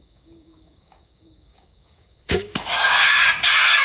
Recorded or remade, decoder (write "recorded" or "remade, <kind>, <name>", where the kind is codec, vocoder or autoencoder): remade, codec, DAC